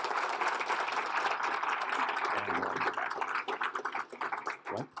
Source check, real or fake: real